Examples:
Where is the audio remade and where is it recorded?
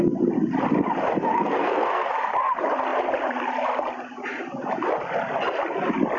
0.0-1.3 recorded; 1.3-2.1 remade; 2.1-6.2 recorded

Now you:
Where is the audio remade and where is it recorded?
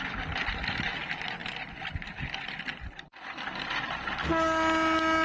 0.0-1.4 recorded; 1.4-3.7 remade; 3.7-5.2 recorded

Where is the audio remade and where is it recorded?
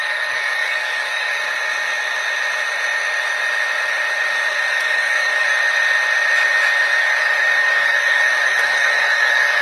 0.0-1.4 remade; 1.4-4.5 recorded; 4.5-5.5 remade; 5.5-7.0 recorded; 7.0-9.6 remade